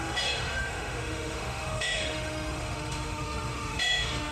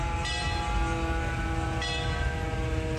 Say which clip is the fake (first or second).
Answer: first